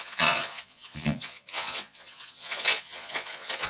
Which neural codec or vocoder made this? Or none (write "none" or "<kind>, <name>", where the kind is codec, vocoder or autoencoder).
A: vocoder, Vocos